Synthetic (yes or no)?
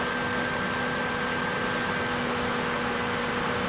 no